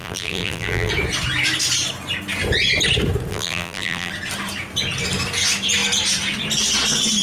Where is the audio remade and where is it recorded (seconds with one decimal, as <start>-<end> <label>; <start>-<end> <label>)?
0.0-0.9 remade; 0.9-3.3 recorded; 3.3-4.1 remade; 4.1-7.2 recorded